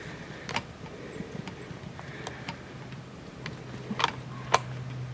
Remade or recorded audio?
recorded